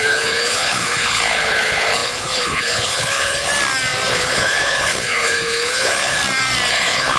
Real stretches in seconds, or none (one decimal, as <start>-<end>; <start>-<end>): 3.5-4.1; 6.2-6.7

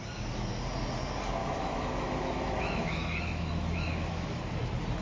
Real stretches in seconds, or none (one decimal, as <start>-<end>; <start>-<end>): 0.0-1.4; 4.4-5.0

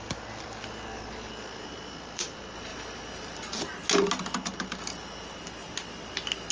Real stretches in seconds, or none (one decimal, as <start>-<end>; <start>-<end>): 0.0-6.5